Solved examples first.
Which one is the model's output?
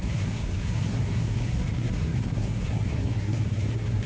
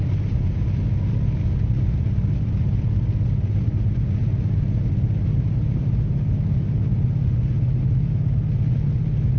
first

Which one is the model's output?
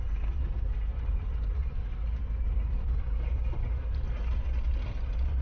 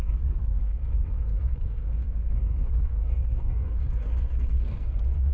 second